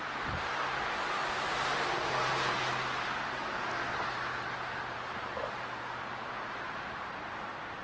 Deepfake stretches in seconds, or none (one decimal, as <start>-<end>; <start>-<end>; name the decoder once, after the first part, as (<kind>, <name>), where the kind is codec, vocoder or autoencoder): 1.2-2.5 (vocoder, BigVGAN v2)